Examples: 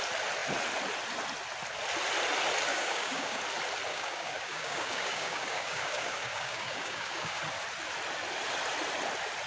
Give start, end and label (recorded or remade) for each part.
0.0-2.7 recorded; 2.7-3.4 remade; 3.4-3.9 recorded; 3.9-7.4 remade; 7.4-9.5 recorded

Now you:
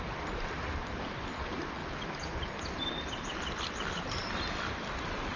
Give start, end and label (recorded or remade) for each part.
0.0-5.4 recorded